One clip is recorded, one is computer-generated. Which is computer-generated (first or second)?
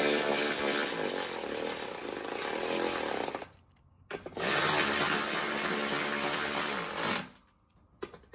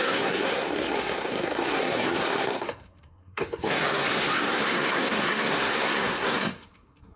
second